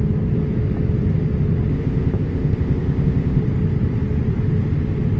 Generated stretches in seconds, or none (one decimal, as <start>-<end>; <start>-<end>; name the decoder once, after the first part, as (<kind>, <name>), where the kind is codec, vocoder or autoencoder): 1.7-3.4 (codec, ZipCodec)